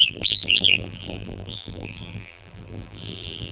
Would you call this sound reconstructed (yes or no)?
yes